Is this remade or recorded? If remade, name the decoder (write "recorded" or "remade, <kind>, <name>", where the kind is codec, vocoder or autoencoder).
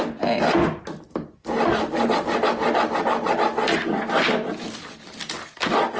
recorded